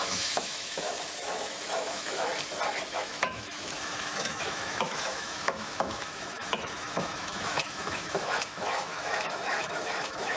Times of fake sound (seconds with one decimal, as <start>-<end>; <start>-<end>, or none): 0.0-2.3; 2.9-10.4